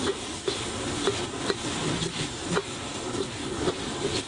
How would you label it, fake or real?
real